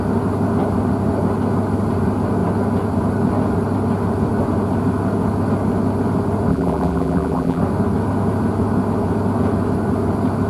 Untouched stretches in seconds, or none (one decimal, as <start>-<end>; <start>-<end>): 0.0-6.5; 7.6-10.5